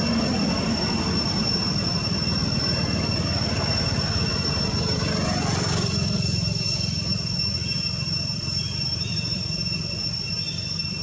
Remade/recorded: recorded